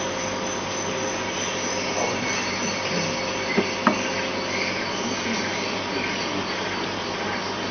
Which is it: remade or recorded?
recorded